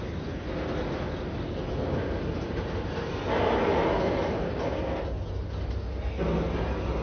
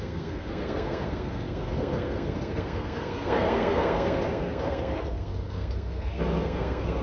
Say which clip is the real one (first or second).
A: first